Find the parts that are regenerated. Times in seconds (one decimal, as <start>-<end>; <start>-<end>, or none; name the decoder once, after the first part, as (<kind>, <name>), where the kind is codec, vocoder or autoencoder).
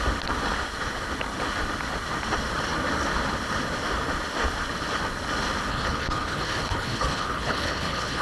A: 5.7-8.2 (codec, HILCodec)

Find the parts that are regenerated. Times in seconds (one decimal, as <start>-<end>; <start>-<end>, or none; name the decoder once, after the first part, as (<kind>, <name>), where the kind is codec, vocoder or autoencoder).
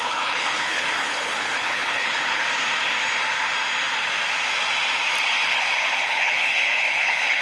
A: 0.0-2.4 (codec, HILCodec); 5.2-7.4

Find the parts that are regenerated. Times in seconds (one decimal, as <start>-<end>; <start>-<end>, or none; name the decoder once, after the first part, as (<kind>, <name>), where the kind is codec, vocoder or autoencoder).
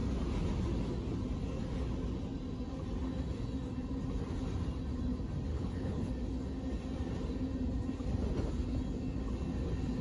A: 5.5-6.1 (codec, HILCodec)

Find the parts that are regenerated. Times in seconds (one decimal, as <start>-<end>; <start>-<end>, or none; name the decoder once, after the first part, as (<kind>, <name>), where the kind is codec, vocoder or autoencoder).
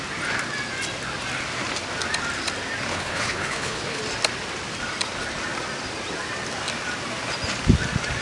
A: 2.9-4.0 (codec, HILCodec)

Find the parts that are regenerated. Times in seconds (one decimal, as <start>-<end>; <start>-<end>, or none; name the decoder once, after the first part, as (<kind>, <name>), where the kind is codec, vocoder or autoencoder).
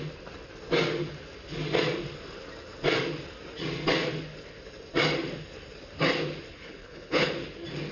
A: 6.5-7.3 (codec, HILCodec)